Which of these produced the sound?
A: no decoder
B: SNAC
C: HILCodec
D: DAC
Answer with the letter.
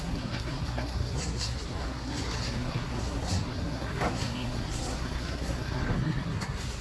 B